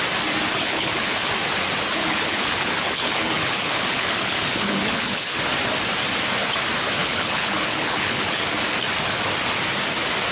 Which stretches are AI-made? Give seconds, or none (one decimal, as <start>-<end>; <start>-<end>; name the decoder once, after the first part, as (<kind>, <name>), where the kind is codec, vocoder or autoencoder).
0.5-1.3 (codec, HILCodec); 2.0-5.4; 7.0-8.4